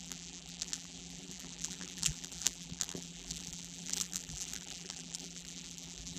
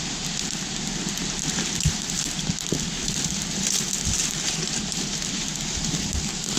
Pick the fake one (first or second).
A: first